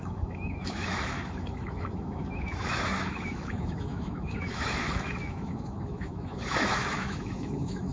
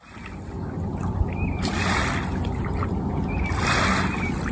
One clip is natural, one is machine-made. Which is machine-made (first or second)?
first